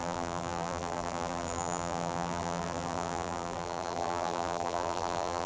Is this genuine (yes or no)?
no